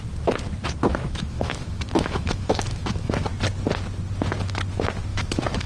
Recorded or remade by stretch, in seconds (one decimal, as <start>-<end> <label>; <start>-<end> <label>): 0.0-0.9 recorded; 0.9-3.3 remade; 3.3-5.1 recorded; 5.1-5.7 remade